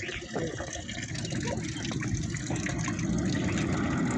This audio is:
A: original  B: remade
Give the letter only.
A